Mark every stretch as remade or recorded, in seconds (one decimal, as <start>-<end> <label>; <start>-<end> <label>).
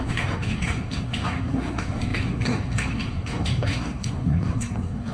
0.0-5.1 remade